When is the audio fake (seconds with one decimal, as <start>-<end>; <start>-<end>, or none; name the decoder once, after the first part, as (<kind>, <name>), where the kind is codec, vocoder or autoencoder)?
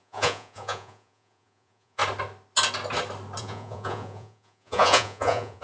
0.0-2.0 (vocoder, Vocos); 3.4-5.6